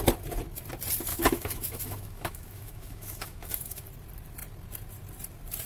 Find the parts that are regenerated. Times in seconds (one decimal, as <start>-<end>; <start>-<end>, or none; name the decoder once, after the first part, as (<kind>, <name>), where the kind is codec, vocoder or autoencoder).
1.1-3.9 (autoencoder, DAC-VAE)

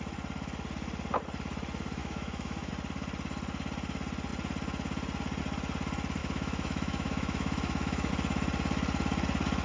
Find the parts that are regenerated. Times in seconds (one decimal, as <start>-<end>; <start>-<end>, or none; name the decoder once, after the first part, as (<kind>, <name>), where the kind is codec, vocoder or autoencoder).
2.0-2.7 (autoencoder, DAC-VAE); 6.2-8.1

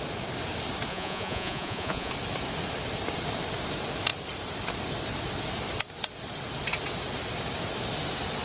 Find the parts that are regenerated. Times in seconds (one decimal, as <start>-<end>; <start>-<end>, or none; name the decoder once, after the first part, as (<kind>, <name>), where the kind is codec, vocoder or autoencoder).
0.9-2.1 (vocoder, Vocos)

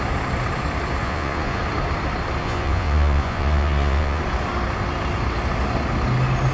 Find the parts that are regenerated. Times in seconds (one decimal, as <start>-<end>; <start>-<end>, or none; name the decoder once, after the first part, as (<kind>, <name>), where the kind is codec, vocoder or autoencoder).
1.0-1.6 (vocoder, Vocos); 2.4-4.2

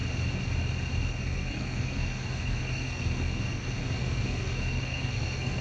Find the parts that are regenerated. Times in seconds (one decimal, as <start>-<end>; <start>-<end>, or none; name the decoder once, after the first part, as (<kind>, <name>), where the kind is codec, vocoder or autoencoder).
1.2-5.6 (codec, SNAC)

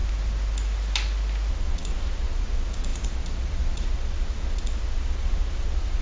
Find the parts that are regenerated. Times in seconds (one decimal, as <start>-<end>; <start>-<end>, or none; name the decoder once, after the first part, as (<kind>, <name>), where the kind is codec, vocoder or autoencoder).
1.5-6.0 (vocoder, Vocos)

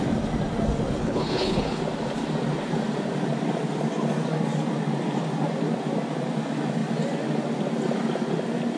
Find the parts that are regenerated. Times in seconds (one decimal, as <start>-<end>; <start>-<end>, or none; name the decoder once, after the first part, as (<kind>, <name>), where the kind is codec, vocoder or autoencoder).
1.0-1.8 (codec, HILCodec)